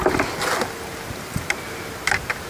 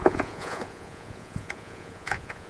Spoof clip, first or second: second